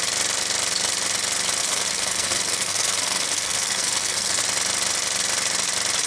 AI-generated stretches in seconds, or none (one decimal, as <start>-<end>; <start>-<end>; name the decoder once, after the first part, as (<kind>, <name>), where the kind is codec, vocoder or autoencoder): 1.6-4.4 (codec, SNAC)